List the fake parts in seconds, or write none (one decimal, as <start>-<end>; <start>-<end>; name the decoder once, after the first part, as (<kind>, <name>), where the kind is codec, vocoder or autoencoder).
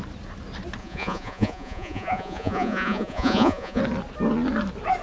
0.8-3.8 (vocoder, Vocos)